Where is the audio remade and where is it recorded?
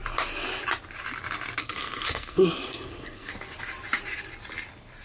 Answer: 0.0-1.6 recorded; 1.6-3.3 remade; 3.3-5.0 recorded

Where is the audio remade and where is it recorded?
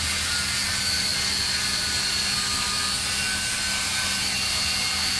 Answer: 0.0-5.2 recorded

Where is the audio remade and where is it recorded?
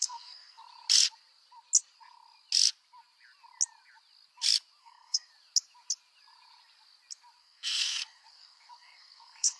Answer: 0.0-0.6 remade; 0.6-4.8 recorded; 4.8-5.3 remade; 5.3-7.4 recorded; 7.4-9.6 remade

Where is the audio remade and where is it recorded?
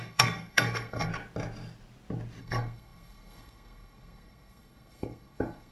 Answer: 0.0-1.1 remade; 1.1-2.4 recorded; 2.4-5.7 remade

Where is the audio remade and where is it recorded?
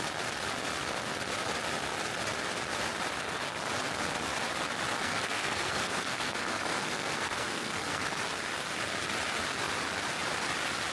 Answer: 0.0-4.9 recorded; 4.9-8.2 remade; 8.2-10.9 recorded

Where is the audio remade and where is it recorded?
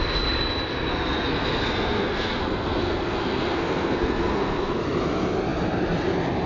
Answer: 0.0-0.9 recorded; 0.9-4.8 remade; 4.8-6.5 recorded